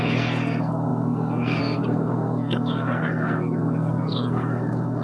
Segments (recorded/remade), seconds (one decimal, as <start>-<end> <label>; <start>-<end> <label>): 0.0-5.0 remade